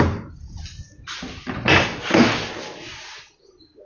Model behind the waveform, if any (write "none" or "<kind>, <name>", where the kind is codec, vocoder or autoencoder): none